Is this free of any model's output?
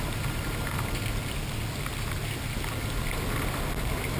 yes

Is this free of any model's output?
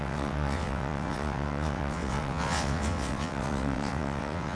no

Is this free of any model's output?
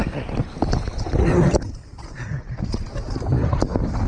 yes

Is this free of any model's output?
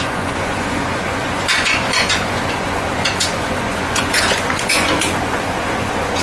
no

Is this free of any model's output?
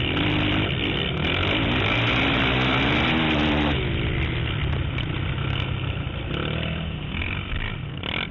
yes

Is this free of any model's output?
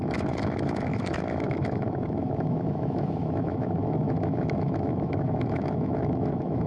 no